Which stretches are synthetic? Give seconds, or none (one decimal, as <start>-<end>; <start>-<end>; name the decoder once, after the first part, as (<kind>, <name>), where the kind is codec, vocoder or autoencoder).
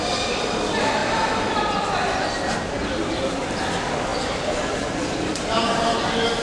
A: 1.0-1.6 (vocoder, BigVGAN v2); 4.1-5.6